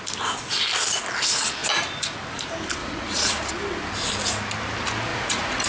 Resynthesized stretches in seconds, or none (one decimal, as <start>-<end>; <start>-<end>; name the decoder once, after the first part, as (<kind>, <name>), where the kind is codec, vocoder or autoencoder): 2.8-3.5 (vocoder, Vocos); 5.1-5.7